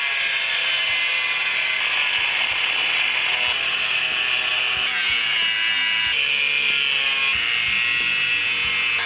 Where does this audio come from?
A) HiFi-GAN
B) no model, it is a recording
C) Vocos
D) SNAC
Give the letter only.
B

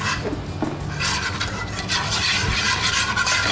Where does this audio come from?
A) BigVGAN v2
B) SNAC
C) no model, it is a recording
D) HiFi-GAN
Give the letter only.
C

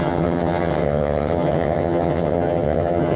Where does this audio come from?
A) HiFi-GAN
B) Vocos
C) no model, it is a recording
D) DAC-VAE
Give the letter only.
A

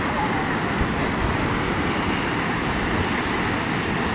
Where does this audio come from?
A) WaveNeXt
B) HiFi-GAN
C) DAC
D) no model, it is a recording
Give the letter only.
D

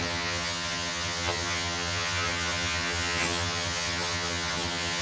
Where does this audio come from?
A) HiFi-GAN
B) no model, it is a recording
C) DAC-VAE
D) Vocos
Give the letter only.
A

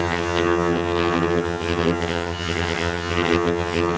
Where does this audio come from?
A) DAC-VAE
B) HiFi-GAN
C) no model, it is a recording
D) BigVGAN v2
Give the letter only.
B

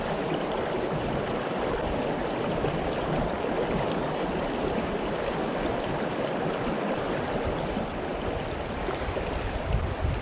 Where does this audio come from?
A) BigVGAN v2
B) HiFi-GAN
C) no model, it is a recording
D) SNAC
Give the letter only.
C